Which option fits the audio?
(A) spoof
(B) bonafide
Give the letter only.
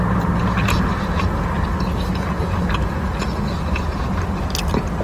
B